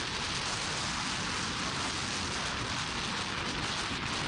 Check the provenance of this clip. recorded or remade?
recorded